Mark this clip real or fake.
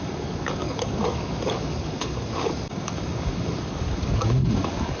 fake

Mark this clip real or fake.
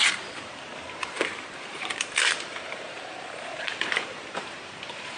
fake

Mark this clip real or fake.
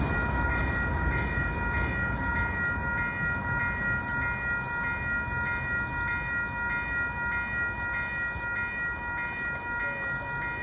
real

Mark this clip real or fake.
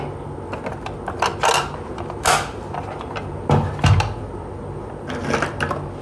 real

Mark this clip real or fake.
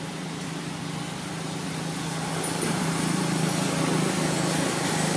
real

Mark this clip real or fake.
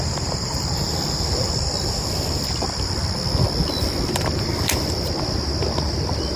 real